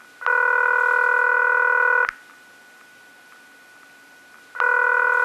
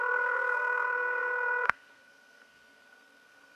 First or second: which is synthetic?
second